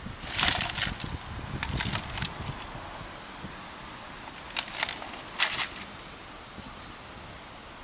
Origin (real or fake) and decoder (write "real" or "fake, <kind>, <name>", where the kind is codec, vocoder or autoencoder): real